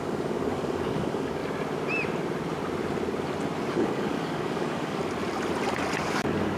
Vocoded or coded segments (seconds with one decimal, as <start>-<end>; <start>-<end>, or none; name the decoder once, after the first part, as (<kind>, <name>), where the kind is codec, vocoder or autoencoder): 0.0-1.4 (codec, DAC); 3.7-5.0; 6.0-6.6